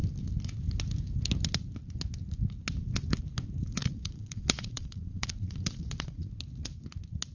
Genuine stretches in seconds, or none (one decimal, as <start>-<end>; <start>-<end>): 0.0-3.8; 6.3-7.3